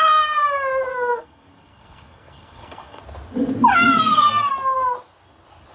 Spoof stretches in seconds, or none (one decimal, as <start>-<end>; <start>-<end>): 0.9-3.0; 3.7-4.5